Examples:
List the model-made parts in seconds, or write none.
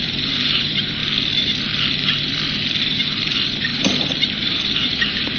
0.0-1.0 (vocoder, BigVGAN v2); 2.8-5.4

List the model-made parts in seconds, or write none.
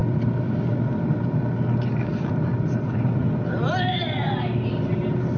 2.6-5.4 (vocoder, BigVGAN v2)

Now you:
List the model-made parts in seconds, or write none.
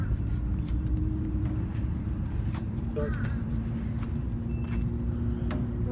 0.0-3.5 (vocoder, BigVGAN v2)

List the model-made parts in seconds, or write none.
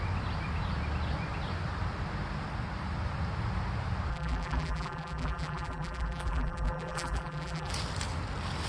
4.1-7.7 (vocoder, BigVGAN v2)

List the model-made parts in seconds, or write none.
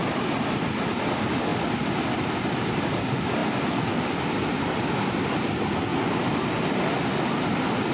0.0-1.5 (vocoder, BigVGAN v2); 2.3-7.9